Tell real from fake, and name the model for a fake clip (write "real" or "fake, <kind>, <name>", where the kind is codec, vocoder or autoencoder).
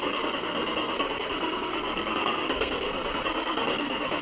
fake, codec, SNAC